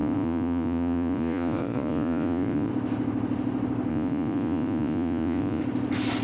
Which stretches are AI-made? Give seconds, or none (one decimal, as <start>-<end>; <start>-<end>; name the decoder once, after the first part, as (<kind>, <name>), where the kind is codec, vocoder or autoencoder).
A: 0.0-2.7 (vocoder, Vocos); 3.9-5.6